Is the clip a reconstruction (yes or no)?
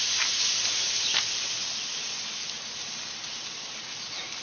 no